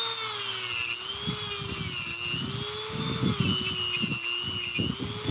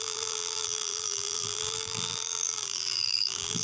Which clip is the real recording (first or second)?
first